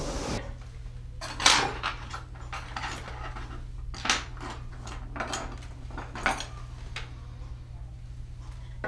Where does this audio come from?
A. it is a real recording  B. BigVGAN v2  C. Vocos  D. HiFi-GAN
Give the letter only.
A